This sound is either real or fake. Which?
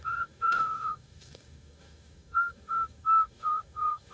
fake